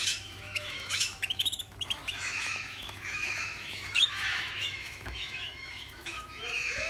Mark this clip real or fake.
fake